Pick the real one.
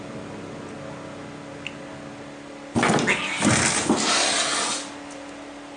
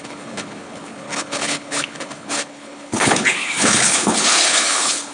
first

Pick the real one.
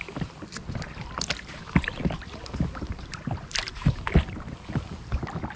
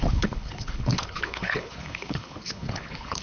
first